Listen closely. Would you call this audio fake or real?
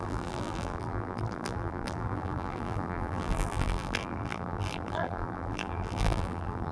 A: fake